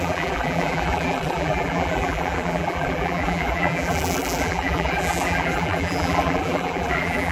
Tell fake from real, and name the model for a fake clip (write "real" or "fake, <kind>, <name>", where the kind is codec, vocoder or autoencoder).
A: fake, vocoder, BigVGAN v2